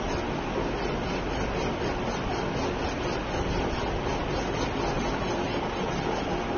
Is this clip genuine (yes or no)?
yes